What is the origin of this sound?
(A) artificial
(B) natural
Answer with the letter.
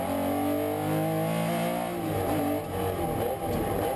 B